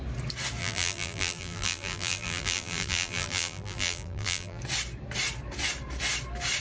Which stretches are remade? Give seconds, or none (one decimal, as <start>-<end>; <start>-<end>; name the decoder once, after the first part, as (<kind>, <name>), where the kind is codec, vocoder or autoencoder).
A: 0.6-4.6 (vocoder, BigVGAN v2)